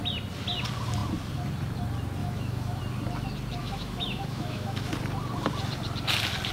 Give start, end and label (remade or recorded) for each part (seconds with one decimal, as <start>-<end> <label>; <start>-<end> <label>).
0.0-2.2 recorded; 2.2-2.8 remade; 2.8-3.6 recorded; 3.6-4.9 remade; 4.9-6.5 recorded